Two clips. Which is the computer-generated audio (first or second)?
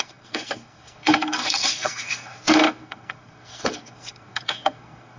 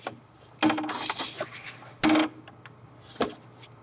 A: first